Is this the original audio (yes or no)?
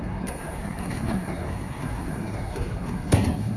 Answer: no